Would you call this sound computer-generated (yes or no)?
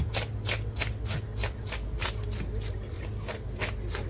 no